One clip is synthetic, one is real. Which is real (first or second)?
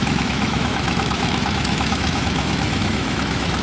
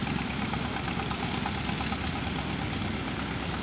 second